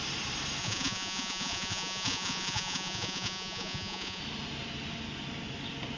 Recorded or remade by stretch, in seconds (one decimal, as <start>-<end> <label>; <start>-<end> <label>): 0.0-0.6 recorded; 0.6-4.2 remade; 4.2-6.0 recorded